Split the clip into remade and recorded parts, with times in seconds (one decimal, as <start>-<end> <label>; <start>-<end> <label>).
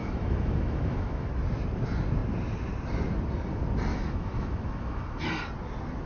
0.0-1.3 remade; 1.3-3.9 recorded; 3.9-5.3 remade; 5.3-6.1 recorded